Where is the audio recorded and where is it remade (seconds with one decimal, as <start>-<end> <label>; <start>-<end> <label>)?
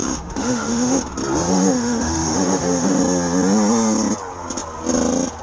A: 0.0-1.0 remade; 1.0-1.5 recorded; 1.5-3.0 remade; 3.0-5.4 recorded